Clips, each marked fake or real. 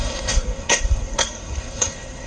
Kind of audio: fake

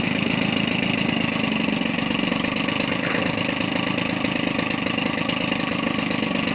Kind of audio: real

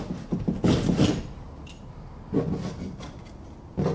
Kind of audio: real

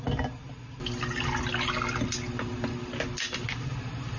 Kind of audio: real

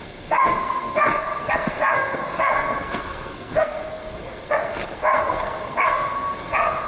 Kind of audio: fake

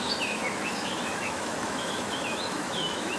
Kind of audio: fake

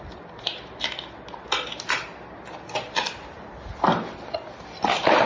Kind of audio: real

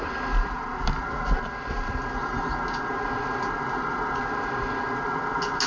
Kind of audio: real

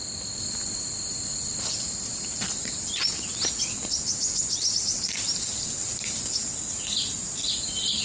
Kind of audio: real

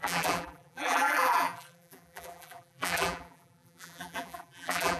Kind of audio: fake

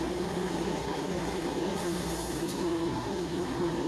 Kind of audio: fake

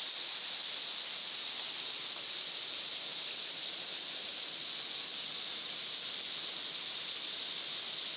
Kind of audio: real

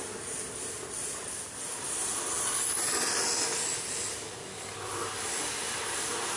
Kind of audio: real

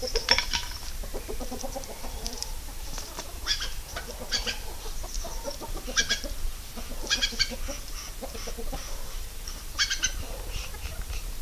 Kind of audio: fake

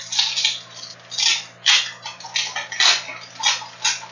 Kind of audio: real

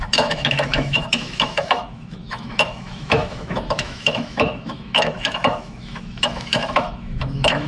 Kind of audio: fake